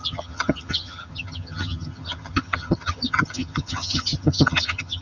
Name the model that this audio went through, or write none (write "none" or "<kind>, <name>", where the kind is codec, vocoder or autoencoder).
vocoder, HiFi-GAN